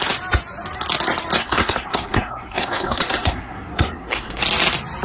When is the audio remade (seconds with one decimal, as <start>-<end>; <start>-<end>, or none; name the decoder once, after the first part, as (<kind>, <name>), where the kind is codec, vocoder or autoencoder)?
1.4-4.4 (codec, SNAC)